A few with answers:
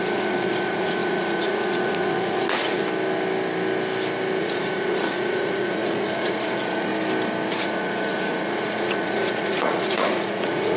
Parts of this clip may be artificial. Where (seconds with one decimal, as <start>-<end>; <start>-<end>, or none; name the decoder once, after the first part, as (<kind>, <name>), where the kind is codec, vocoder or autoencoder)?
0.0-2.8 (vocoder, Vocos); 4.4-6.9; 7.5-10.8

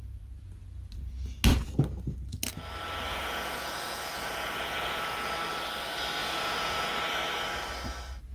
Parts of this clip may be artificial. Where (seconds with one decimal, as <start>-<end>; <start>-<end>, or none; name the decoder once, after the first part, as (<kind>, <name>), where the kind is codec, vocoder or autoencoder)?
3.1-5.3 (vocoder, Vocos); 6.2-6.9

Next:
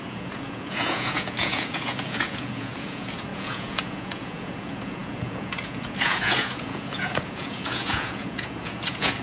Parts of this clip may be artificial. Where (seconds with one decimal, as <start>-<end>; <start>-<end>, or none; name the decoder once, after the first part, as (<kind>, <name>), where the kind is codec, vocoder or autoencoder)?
0.0-9.2 (vocoder, Vocos)

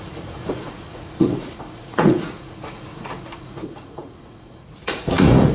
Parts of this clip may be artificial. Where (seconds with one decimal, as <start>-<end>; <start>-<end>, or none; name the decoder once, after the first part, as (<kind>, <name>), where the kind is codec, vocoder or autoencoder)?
0.0-5.5 (vocoder, Vocos)

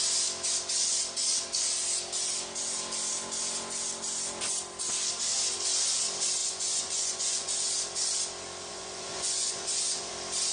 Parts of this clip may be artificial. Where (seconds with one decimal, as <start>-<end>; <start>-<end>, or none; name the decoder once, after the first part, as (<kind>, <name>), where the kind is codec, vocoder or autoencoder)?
6.4-7.5 (vocoder, Vocos); 8.7-10.1

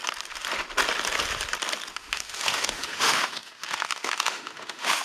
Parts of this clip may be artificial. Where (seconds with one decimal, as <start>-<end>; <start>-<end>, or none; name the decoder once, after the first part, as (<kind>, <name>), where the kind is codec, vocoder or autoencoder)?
1.9-5.0 (autoencoder, DAC-VAE)

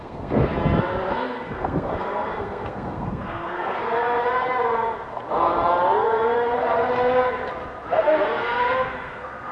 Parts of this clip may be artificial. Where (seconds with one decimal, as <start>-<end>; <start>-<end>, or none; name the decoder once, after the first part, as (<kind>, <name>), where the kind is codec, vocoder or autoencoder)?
0.0-0.5 (codec, SNAC); 1.1-4.2; 7.9-9.5

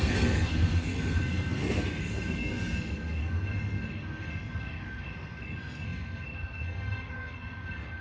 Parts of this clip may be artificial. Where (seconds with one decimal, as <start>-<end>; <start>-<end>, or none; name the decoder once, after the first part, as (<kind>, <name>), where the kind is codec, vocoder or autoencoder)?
0.0-8.0 (codec, SNAC)